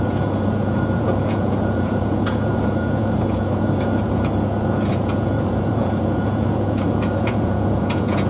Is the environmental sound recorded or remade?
remade